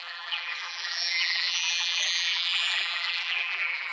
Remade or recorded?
remade